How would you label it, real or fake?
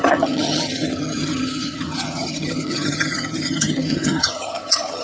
fake